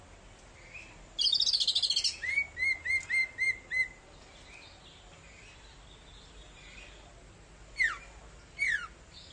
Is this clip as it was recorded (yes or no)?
yes